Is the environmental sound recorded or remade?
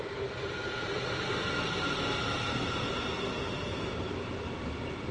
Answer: recorded